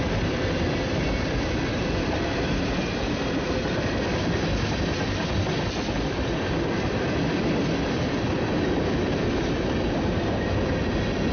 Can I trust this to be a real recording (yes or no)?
yes